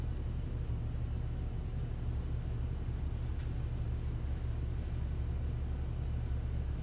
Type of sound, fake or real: real